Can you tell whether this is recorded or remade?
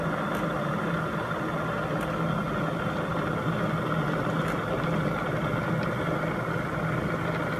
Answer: recorded